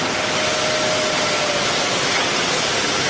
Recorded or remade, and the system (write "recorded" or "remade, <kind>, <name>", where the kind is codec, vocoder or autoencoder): recorded